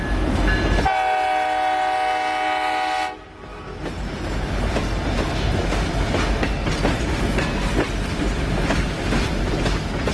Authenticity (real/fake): real